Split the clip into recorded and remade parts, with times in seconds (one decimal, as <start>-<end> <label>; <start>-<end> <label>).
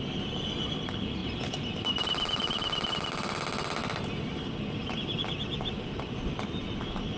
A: 0.0-1.2 recorded; 1.2-2.9 remade; 2.9-7.2 recorded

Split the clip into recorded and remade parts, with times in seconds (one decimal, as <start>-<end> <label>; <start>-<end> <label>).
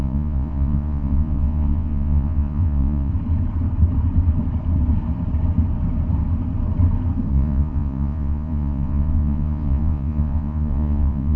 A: 0.0-3.1 remade; 3.1-7.3 recorded; 7.3-11.4 remade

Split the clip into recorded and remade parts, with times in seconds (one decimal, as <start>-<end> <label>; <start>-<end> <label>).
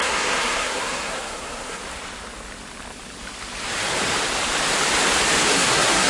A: 0.0-1.8 remade; 1.8-5.5 recorded; 5.5-6.1 remade